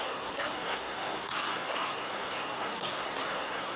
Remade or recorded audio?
remade